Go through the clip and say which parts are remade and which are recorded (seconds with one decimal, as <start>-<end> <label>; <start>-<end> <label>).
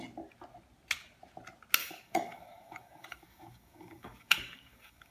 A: 0.0-1.8 recorded; 1.8-5.1 remade